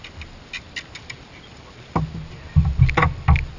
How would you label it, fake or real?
real